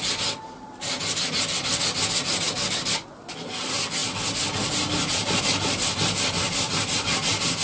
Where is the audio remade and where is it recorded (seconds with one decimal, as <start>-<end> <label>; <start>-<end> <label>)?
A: 0.0-7.6 recorded